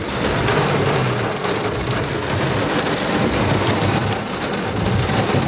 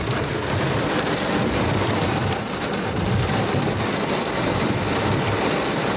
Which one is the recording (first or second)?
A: first